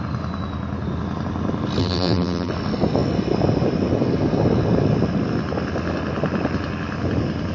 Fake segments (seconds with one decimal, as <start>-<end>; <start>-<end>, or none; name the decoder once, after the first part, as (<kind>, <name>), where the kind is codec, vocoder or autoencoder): 1.8-2.5 (vocoder, BigVGAN v2)